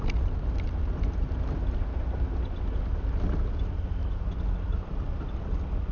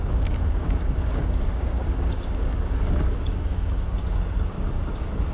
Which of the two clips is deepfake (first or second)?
second